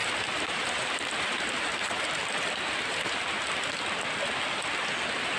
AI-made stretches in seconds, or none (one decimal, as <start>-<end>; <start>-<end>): 0.0-3.2